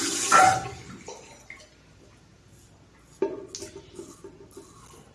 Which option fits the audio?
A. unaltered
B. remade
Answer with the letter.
A